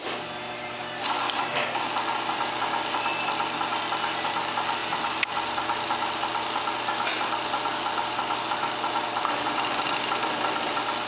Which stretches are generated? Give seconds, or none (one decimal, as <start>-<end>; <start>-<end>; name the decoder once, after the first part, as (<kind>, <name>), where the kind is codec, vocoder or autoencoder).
none